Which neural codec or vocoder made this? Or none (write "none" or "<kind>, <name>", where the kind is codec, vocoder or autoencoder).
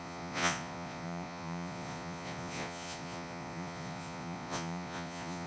vocoder, Vocos